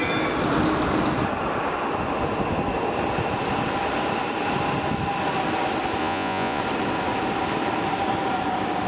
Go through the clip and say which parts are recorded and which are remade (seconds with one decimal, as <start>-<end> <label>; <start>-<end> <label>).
0.0-6.0 recorded; 6.0-6.6 remade; 6.6-8.9 recorded